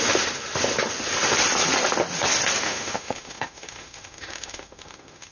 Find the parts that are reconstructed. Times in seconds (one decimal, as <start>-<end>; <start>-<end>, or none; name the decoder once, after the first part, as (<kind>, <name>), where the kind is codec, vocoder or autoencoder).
2.6-5.3 (autoencoder, DAC-VAE)